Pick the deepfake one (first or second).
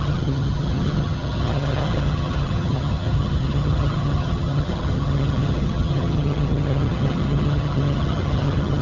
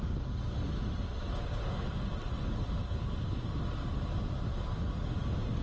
first